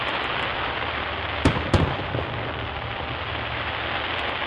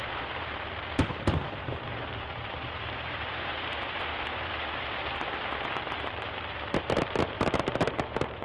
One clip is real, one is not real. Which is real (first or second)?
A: first